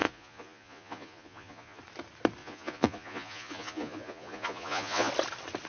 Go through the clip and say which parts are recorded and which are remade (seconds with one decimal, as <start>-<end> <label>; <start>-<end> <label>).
0.0-1.8 remade; 1.8-2.4 recorded; 2.4-5.1 remade; 5.1-5.7 recorded